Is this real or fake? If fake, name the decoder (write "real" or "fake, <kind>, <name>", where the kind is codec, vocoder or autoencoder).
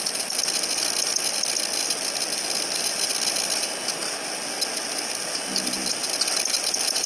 real